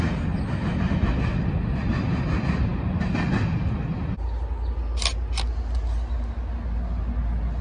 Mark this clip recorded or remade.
recorded